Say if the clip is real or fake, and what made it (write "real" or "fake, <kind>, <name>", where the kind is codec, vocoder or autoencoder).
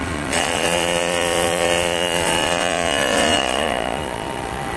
fake, vocoder, Vocos